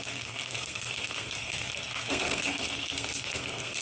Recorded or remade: remade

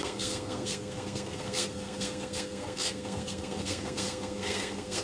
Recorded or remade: remade